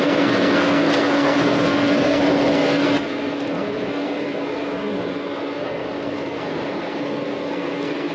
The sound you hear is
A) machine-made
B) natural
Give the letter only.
A